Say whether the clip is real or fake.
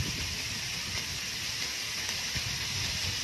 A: real